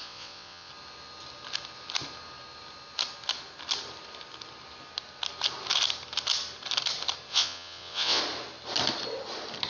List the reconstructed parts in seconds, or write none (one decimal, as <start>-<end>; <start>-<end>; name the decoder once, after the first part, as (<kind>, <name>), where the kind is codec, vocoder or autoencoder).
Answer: 0.0-0.7 (vocoder, WaveNeXt); 7.3-8.2